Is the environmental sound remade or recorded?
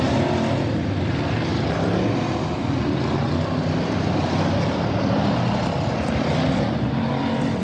recorded